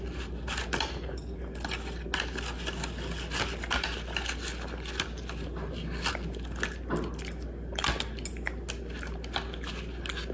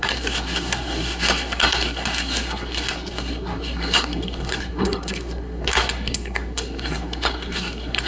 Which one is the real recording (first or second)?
first